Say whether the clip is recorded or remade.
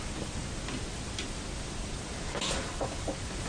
recorded